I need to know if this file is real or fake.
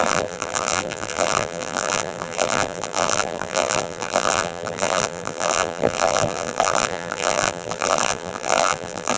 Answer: fake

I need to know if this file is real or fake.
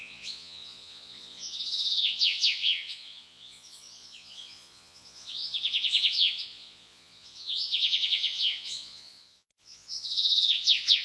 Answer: fake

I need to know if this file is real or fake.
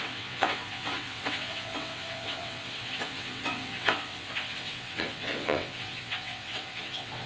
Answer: fake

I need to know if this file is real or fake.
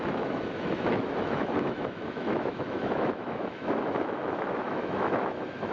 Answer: fake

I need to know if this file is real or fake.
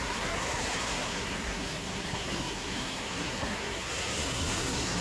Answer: fake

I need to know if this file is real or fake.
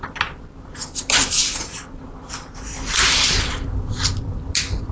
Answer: real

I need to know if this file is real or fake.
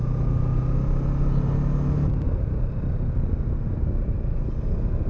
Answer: real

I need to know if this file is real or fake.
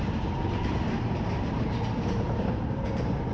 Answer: fake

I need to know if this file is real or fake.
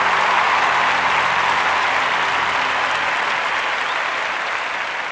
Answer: real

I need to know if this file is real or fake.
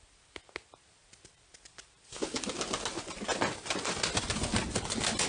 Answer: real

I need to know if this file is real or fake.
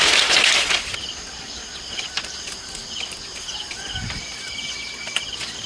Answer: real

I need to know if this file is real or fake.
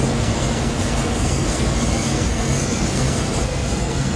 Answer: fake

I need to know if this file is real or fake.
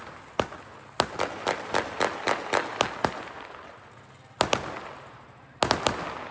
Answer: real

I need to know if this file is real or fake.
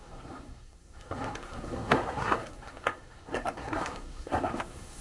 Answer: fake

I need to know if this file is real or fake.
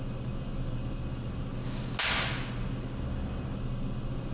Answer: real